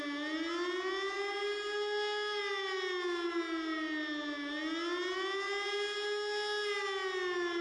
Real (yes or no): yes